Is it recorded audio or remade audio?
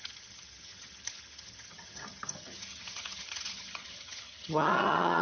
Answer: remade